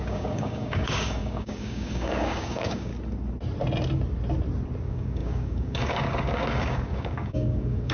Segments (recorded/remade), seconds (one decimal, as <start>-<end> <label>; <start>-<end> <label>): 0.0-2.9 remade; 2.9-4.8 recorded; 4.8-7.9 remade